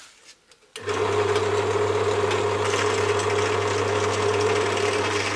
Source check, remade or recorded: recorded